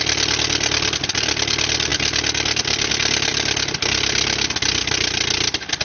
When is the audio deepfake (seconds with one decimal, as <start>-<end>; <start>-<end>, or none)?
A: none